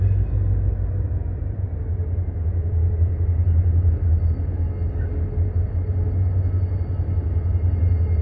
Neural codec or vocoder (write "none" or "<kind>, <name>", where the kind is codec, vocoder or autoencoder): none